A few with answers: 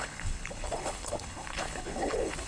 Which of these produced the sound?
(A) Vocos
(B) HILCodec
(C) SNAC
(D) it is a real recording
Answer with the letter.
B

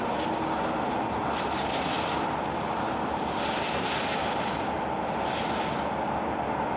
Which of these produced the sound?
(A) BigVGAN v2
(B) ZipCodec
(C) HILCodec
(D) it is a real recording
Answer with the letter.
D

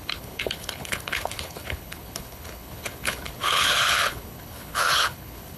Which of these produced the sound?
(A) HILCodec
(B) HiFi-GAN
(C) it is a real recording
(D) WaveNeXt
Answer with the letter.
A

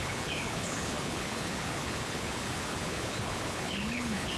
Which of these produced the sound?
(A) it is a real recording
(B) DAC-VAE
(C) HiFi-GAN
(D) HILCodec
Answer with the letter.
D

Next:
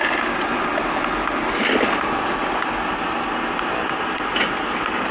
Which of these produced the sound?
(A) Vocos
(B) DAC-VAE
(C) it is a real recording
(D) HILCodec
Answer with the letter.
C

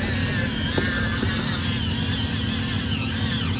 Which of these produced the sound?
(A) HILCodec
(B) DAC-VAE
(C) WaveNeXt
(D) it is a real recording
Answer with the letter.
D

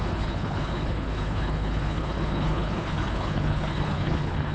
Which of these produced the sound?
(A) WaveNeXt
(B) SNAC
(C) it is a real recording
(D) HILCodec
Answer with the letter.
D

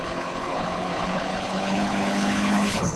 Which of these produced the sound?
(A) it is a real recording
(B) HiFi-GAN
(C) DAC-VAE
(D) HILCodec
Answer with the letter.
D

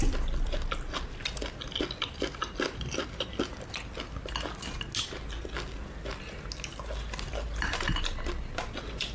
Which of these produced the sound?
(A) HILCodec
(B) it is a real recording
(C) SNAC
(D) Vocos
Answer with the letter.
B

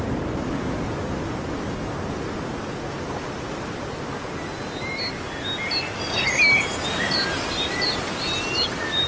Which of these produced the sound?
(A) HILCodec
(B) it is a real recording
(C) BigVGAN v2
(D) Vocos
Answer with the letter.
B